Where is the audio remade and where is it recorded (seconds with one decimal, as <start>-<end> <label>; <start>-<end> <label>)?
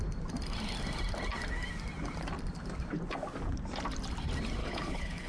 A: 0.0-4.6 recorded; 4.6-5.3 remade